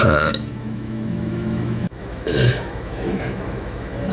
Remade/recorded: remade